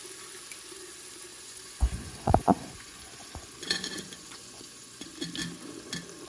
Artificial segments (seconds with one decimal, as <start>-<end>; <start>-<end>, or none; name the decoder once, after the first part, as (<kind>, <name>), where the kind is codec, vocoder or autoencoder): 1.3-5.1 (vocoder, Vocos)